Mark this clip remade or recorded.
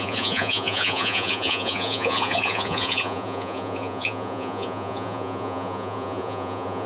remade